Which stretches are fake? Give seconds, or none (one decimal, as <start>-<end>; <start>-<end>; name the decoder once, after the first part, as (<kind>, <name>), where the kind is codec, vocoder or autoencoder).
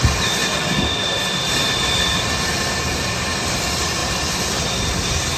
none